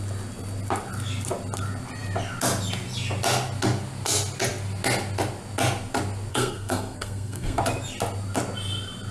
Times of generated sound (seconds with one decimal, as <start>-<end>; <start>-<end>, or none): 6.3-7.6